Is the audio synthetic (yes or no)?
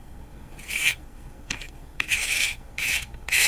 yes